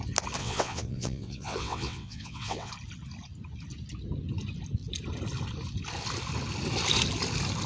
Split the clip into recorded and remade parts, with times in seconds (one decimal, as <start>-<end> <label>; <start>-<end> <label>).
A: 0.0-0.4 recorded; 0.4-2.7 remade; 2.7-7.7 recorded